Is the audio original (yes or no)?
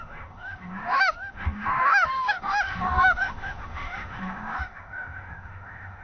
no